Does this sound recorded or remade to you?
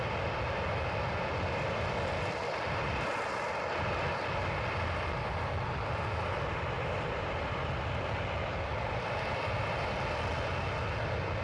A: recorded